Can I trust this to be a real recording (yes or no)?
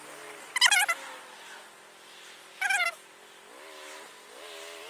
yes